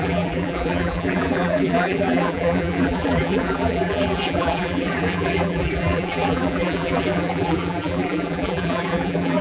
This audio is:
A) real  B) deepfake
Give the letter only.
B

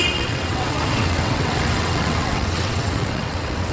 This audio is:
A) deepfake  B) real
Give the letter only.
A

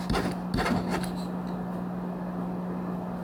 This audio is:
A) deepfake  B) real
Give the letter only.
B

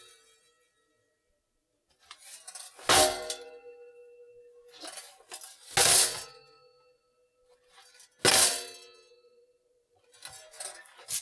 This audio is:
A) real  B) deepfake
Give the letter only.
A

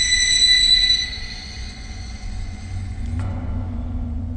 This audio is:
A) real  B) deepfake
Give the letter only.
B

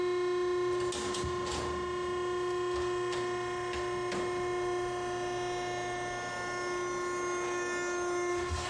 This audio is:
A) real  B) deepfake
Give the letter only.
A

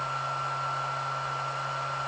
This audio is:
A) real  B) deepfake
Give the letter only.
A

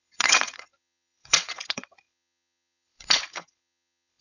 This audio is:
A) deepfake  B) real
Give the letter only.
A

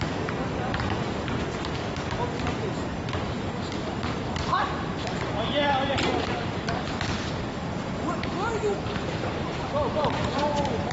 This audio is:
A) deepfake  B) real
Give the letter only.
B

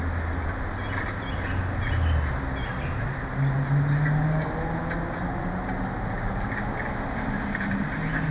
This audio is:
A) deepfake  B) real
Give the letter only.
B